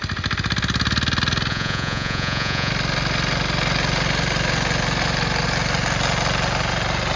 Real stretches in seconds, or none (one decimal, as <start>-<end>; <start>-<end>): 0.0-1.5; 2.7-7.2